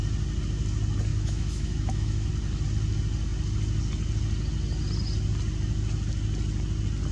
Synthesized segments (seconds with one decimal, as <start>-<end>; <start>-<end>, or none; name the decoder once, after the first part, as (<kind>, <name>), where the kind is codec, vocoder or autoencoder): 1.1-2.3 (autoencoder, DAC-VAE)